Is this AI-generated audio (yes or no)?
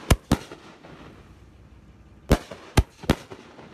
no